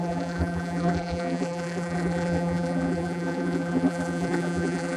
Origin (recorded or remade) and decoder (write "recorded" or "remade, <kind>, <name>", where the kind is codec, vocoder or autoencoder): remade, vocoder, BigVGAN v2